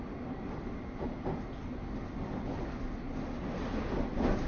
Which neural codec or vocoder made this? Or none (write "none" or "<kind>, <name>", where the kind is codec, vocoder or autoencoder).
none